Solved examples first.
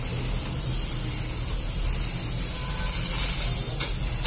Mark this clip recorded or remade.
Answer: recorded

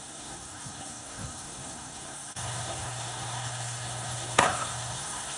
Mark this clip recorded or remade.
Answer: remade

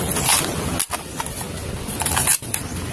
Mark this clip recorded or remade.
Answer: recorded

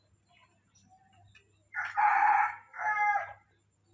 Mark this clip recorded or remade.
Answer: recorded